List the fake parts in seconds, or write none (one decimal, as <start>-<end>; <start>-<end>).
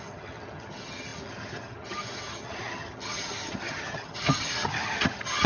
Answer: 0.0-5.5